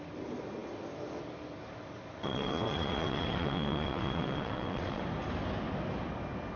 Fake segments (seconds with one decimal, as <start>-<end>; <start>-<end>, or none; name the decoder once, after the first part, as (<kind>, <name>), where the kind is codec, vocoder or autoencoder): 2.2-5.0 (vocoder, WaveNeXt)